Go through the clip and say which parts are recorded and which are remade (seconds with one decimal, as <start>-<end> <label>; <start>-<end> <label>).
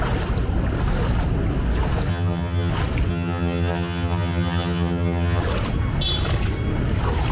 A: 0.0-2.1 recorded; 2.1-2.7 remade; 2.7-3.1 recorded; 3.1-5.4 remade; 5.4-7.3 recorded